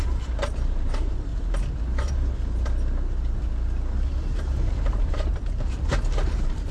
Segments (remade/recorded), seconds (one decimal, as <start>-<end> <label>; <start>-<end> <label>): 0.0-1.3 remade; 1.3-4.7 recorded; 4.7-6.7 remade